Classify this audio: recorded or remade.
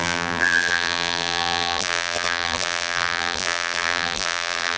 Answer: remade